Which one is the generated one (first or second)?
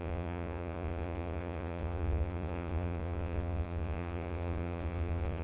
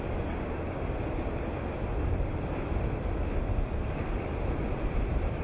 first